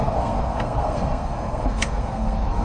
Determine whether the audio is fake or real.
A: fake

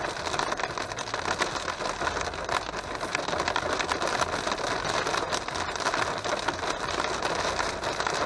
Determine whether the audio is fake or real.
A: real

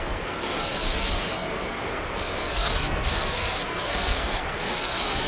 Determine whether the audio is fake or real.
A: fake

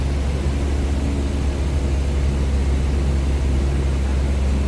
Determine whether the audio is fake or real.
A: real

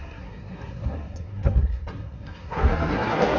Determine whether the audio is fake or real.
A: fake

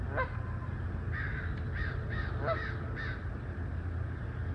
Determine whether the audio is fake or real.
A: real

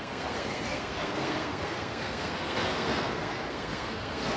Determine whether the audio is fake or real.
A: fake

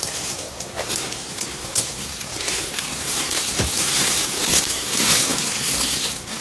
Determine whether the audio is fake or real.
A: fake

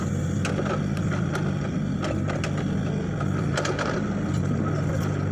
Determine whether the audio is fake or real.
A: real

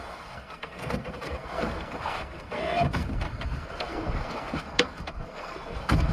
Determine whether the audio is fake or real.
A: fake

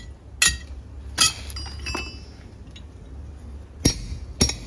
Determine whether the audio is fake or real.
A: real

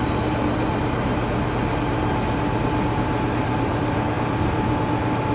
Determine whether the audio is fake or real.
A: real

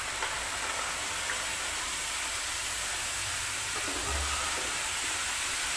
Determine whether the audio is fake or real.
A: real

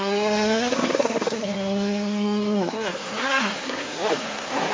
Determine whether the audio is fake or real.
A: fake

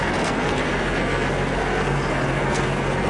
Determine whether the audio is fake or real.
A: fake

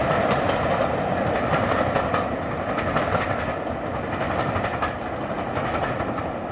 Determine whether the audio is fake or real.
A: real